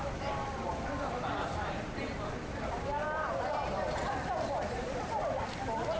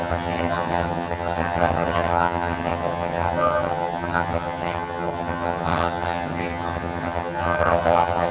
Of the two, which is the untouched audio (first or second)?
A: first